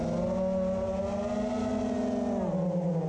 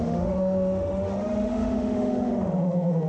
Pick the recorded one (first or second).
first